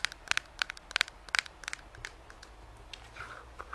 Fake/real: real